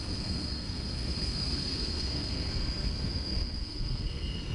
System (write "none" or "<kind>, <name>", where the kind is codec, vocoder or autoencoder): codec, SNAC